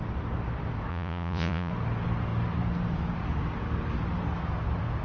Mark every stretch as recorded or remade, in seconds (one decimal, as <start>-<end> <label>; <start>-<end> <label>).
0.0-0.9 recorded; 0.9-1.7 remade; 1.7-5.0 recorded